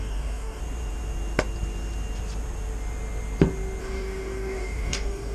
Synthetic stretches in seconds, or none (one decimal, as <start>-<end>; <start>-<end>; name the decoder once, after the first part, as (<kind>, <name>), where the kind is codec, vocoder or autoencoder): 0.0-0.6 (codec, DAC); 3.8-5.3